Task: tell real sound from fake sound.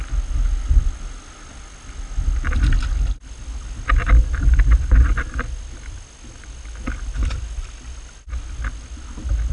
real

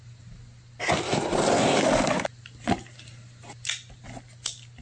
real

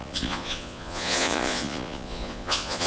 fake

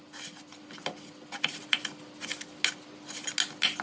real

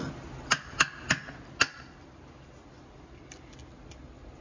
real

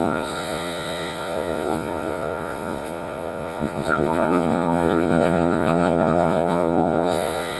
fake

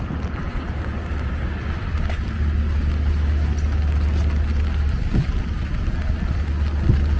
real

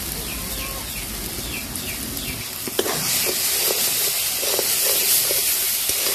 real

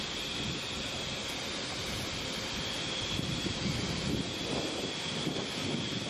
real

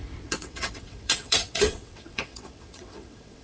fake